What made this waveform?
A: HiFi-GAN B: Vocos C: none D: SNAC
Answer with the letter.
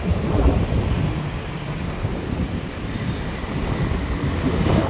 C